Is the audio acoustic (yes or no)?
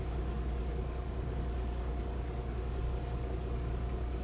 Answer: no